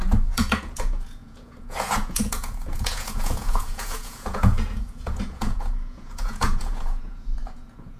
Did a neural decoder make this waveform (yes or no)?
yes